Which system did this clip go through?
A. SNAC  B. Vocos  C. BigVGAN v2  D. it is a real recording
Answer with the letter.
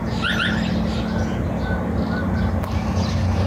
D